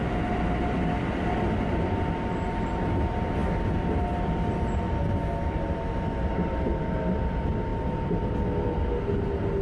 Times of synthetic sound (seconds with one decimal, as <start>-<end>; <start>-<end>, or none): none